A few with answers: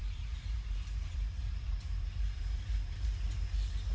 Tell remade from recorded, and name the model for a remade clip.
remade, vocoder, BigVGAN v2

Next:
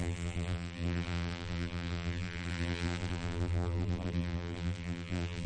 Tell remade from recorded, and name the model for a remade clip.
remade, vocoder, BigVGAN v2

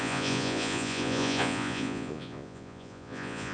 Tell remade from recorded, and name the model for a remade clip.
remade, vocoder, Vocos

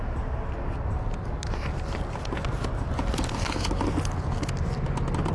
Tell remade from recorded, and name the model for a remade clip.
recorded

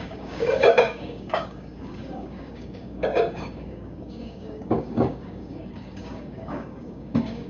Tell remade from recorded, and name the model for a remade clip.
remade, codec, DAC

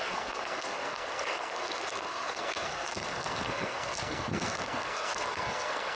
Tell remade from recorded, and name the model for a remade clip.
remade, codec, SNAC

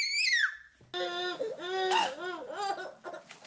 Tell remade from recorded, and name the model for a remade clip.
recorded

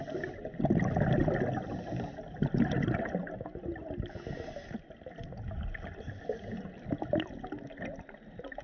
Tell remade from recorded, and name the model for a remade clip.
recorded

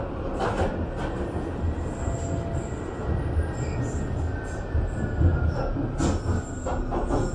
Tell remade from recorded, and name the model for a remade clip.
recorded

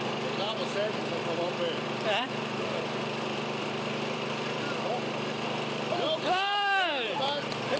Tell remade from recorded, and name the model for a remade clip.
remade, vocoder, BigVGAN v2